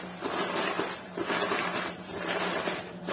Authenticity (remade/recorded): recorded